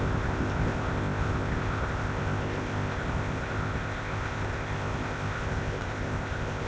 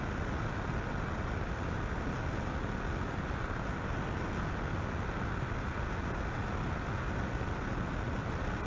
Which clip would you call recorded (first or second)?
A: second